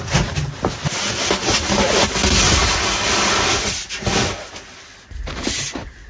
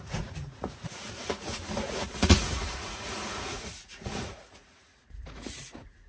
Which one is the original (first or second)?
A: first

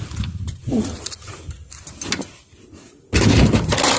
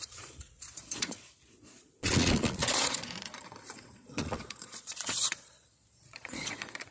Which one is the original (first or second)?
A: first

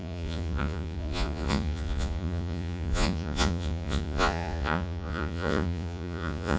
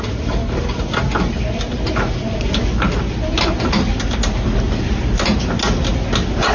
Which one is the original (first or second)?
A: second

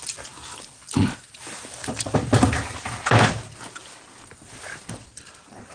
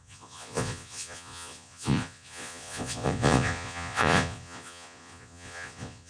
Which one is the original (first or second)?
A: first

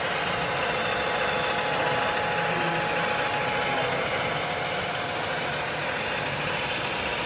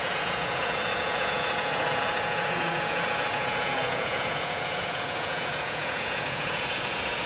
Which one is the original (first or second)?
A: first